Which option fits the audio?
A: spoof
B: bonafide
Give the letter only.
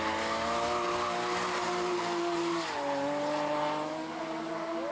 B